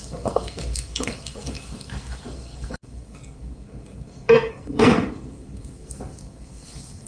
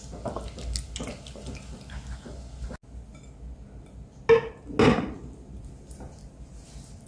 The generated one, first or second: first